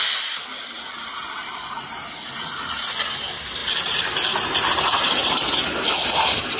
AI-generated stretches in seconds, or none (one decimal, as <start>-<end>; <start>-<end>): 1.4-1.9; 3.6-4.1